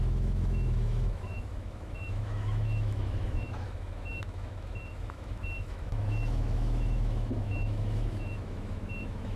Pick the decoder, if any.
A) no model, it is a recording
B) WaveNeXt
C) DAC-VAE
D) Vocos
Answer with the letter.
C